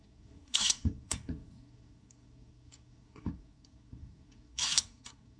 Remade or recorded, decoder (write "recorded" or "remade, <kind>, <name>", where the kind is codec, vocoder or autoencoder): remade, codec, SNAC